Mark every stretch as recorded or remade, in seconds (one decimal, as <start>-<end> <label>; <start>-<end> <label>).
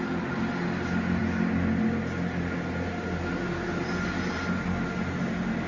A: 0.0-5.7 recorded